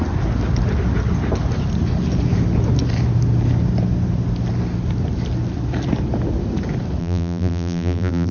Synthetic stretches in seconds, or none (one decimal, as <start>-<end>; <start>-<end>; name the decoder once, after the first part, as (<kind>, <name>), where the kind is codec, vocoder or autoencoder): 7.0-8.3 (vocoder, BigVGAN v2)